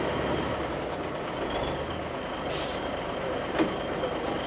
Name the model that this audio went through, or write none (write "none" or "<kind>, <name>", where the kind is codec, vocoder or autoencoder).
none